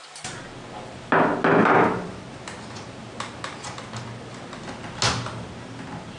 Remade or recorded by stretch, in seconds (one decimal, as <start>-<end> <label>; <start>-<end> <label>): 0.0-1.6 recorded; 1.6-2.2 remade; 2.2-6.2 recorded